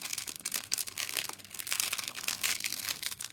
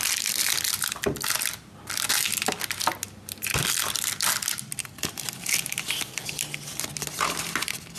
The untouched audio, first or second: second